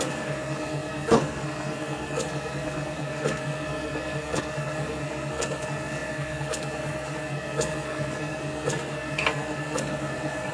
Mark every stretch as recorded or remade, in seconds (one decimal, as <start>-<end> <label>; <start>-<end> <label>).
0.0-10.5 remade